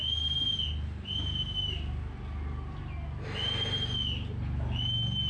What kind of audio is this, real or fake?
real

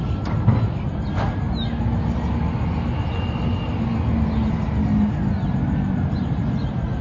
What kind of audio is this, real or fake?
real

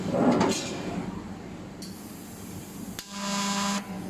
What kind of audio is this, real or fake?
real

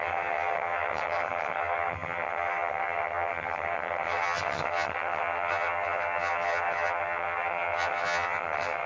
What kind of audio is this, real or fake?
fake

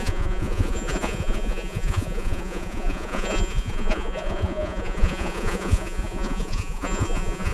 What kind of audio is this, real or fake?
fake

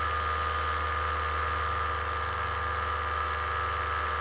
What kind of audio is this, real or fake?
real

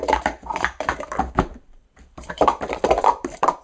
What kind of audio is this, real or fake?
fake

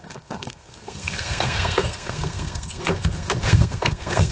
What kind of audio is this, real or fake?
fake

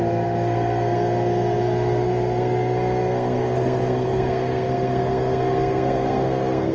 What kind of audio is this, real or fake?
fake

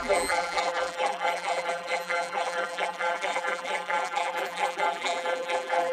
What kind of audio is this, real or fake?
fake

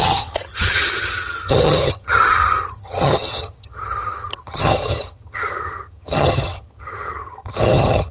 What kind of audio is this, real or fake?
fake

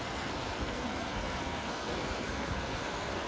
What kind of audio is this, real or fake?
fake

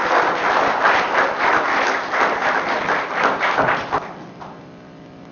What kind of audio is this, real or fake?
real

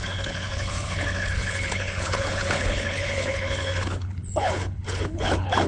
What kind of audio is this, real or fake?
fake